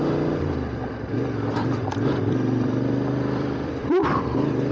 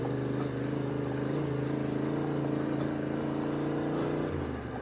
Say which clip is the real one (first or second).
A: second